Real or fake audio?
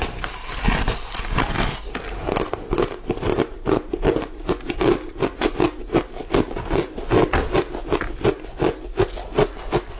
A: real